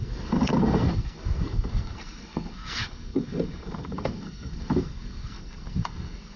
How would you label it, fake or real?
fake